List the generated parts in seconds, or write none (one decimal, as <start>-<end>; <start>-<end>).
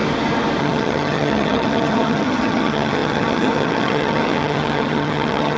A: 0.6-5.6